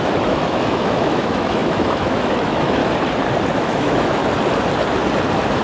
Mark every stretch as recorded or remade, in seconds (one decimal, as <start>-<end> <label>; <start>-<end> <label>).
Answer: 0.0-2.8 remade; 2.8-3.6 recorded; 3.6-4.2 remade; 4.2-5.6 recorded